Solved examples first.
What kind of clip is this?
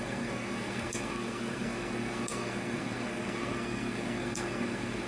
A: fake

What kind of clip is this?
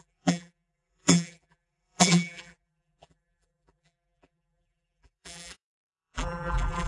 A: fake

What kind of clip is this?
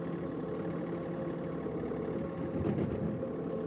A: real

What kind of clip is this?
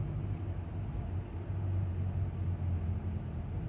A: real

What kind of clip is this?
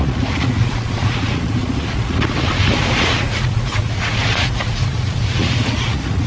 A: fake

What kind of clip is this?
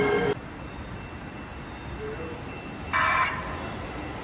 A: real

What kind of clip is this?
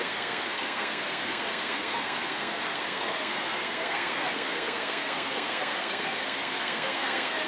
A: fake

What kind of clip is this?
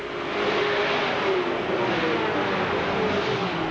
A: real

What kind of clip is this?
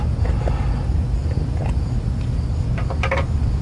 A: real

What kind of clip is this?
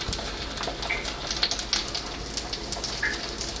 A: real